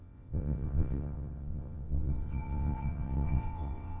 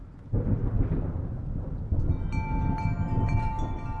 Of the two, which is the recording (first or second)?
second